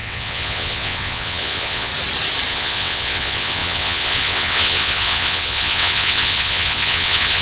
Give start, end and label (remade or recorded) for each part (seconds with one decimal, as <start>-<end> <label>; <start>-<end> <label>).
0.0-1.9 remade; 1.9-2.5 recorded; 2.5-7.4 remade